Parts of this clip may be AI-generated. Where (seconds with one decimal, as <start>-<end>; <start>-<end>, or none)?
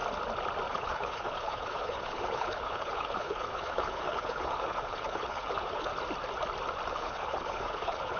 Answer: 0.7-5.9; 6.9-8.2